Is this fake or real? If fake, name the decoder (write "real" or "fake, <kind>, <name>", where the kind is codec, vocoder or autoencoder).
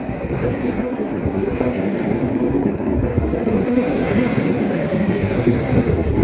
fake, codec, SNAC